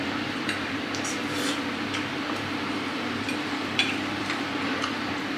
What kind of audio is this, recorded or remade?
remade